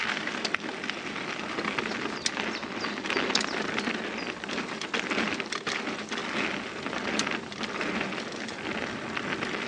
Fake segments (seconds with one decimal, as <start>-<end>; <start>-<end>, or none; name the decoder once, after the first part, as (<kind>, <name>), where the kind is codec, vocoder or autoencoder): none